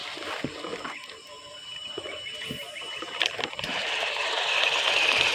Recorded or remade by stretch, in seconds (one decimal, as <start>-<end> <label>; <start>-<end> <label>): 0.0-0.9 recorded; 0.9-1.3 remade; 1.3-3.5 recorded; 3.5-5.3 remade